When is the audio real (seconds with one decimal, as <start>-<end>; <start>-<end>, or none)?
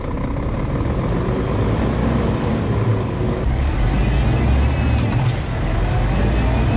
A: 0.0-2.0; 2.5-2.9; 3.8-6.8